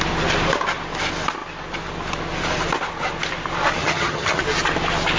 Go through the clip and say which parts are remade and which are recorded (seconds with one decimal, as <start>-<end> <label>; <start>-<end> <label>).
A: 0.0-3.8 recorded; 3.8-4.4 remade; 4.4-5.2 recorded